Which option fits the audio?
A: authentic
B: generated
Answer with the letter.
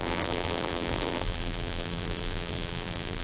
B